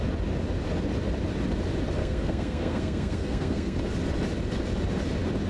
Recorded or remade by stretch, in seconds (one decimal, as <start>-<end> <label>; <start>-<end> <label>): 0.0-2.0 recorded; 2.0-3.8 remade; 3.8-5.5 recorded